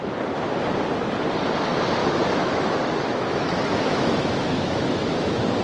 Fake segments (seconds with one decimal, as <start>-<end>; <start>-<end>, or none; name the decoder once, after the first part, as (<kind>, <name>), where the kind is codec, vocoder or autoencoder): 2.0-5.6 (autoencoder, DAC-VAE)